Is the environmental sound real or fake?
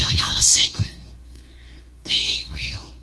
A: fake